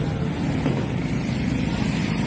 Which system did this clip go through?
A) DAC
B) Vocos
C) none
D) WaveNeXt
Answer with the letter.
C